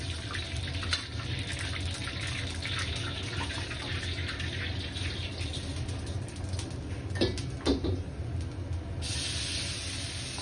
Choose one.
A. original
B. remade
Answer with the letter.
A